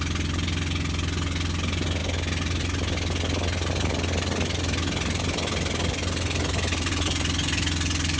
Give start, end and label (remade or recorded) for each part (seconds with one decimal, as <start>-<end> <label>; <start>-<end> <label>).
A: 0.0-8.2 recorded